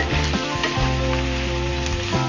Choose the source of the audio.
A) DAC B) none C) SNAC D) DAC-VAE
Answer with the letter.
B